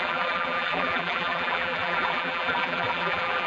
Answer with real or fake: fake